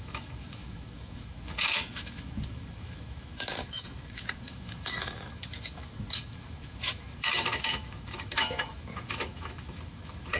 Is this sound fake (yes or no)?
yes